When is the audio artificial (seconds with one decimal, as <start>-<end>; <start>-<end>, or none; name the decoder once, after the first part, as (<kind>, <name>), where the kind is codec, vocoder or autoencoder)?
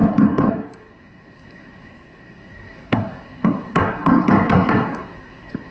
0.0-5.7 (codec, SNAC)